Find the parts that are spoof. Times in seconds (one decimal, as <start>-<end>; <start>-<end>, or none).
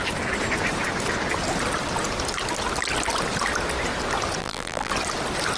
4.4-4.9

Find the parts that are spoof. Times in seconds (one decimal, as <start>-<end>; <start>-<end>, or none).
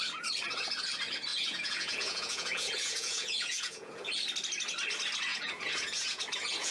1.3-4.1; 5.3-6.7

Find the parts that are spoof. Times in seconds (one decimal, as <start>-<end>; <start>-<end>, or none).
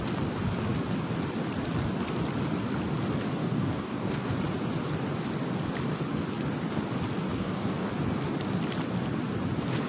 3.4-4.3; 7.3-7.9